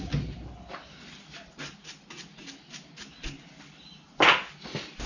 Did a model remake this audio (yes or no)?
no